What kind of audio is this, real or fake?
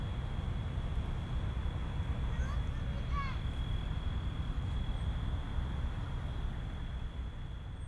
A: real